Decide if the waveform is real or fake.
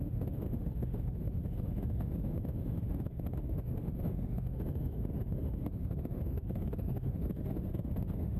fake